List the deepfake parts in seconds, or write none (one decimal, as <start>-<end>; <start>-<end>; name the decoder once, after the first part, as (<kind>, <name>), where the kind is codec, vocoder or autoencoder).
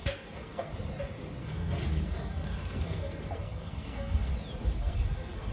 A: 0.0-0.7 (codec, SNAC); 1.4-4.3; 4.8-5.5